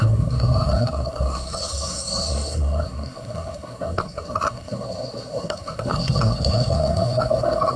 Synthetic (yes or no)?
yes